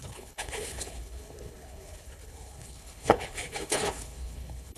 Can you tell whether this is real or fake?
fake